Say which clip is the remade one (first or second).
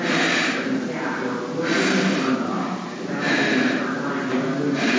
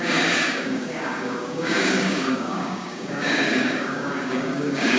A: second